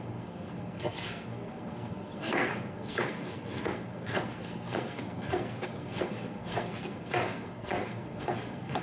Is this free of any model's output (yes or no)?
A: no